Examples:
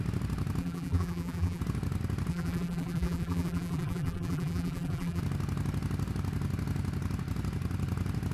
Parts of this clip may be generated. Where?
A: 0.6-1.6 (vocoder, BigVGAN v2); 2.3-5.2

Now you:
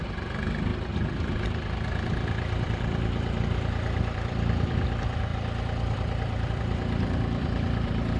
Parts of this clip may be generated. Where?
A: 0.0-8.2 (vocoder, BigVGAN v2)

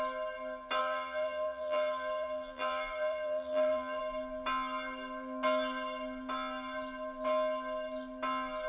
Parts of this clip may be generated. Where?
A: 0.8-4.0 (vocoder, BigVGAN v2)

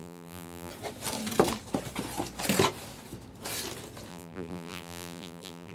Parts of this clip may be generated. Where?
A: 0.0-0.7 (vocoder, BigVGAN v2); 4.1-5.7

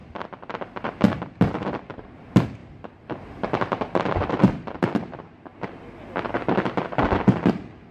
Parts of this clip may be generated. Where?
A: 2.6-4.3 (vocoder, BigVGAN v2); 5.5-6.4